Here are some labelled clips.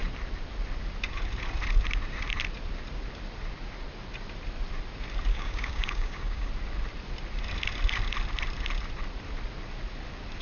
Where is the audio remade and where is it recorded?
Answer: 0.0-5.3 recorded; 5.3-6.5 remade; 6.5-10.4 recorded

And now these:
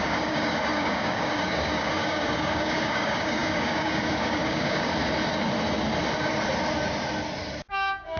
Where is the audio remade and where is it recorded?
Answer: 0.0-4.9 remade; 4.9-7.6 recorded; 7.6-8.2 remade